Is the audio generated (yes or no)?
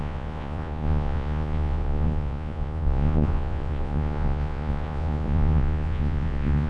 yes